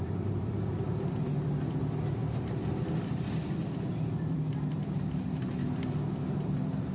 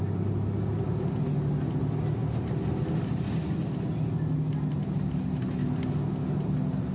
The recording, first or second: second